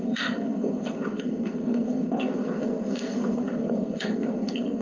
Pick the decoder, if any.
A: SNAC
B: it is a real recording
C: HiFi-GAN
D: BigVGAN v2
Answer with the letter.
A